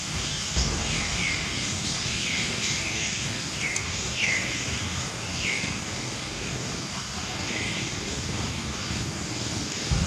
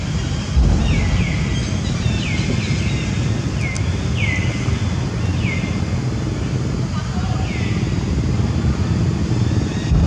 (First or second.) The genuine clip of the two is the second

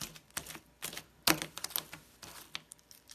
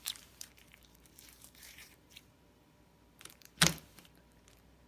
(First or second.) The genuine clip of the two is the first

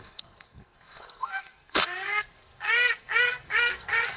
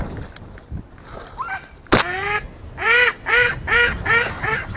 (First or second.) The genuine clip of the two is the second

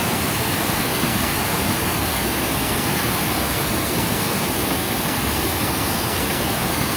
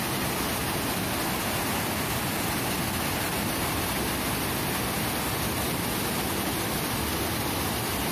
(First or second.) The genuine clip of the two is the second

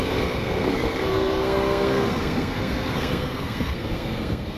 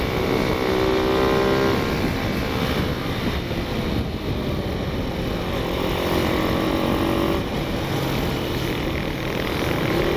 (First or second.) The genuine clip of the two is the second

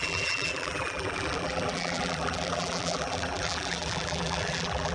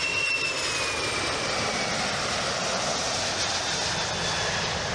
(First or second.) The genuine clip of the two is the second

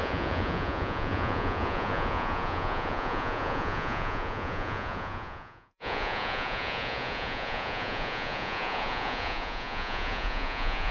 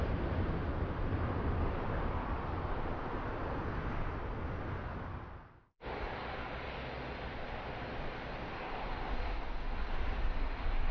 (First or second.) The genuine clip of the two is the second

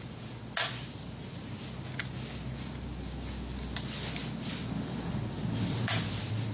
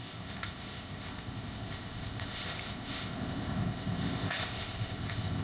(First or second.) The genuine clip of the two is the first